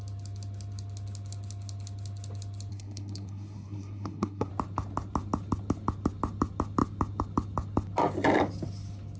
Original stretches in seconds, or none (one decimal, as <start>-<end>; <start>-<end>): 0.0-2.7; 4.5-9.2